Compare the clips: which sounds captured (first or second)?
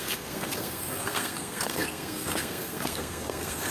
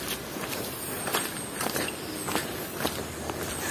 second